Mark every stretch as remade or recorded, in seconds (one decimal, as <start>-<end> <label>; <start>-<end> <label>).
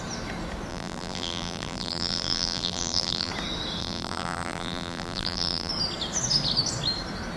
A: 0.0-0.7 recorded; 0.7-3.3 remade; 3.3-3.8 recorded; 3.8-5.7 remade; 5.7-7.4 recorded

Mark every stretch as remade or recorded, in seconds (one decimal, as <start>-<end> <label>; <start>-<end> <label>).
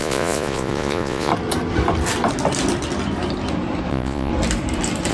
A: 0.0-1.3 remade; 1.3-3.9 recorded; 3.9-4.3 remade; 4.3-5.1 recorded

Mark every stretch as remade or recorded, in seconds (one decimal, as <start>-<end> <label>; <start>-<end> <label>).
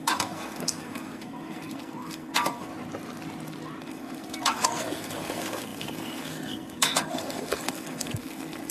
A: 0.0-2.7 remade; 2.7-3.8 recorded; 3.8-8.7 remade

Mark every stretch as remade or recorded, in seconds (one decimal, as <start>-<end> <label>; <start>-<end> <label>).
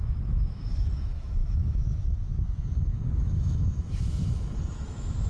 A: 0.0-5.3 remade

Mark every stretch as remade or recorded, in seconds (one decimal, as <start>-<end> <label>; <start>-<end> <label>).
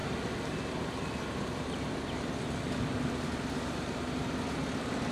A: 0.0-5.1 recorded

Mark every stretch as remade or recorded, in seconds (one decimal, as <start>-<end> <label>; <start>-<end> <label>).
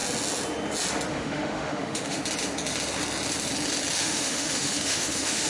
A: 0.0-1.1 recorded; 1.1-2.2 remade; 2.2-4.0 recorded; 4.0-5.5 remade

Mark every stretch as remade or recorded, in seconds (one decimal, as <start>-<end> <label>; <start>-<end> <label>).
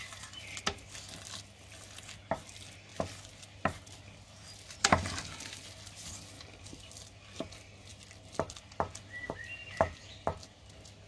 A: 0.0-11.1 recorded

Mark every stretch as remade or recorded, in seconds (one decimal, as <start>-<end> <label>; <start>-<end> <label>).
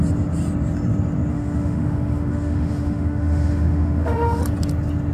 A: 0.0-1.3 recorded; 1.3-4.4 remade; 4.4-5.1 recorded